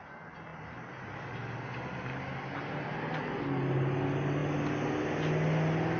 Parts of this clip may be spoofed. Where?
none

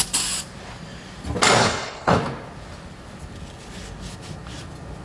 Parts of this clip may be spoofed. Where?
1.6-2.2 (codec, HILCodec)

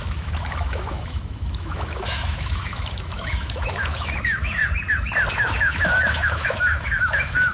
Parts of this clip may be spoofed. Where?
0.0-4.6 (autoencoder, DAC-VAE); 5.3-7.5

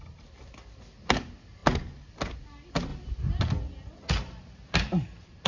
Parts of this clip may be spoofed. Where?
none

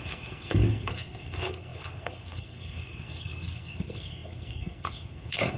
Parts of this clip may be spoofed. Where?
0.0-5.6 (codec, SNAC)

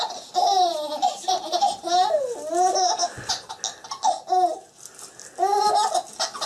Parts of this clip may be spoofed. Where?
0.5-2.2 (vocoder, BigVGAN v2)

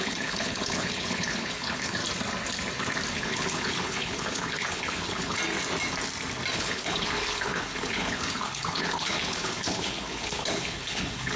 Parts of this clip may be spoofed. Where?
0.0-2.0 (codec, HILCodec); 3.1-5.4; 6.5-11.4

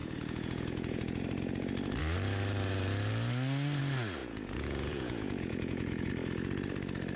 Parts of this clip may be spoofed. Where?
0.0-1.2 (vocoder, Vocos); 4.2-6.1